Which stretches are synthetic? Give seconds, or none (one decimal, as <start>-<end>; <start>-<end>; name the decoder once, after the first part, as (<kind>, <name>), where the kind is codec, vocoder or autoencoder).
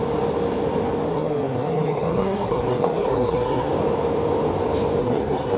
1.1-3.7 (codec, SNAC); 5.0-5.6